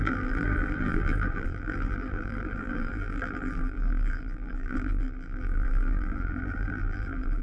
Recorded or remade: remade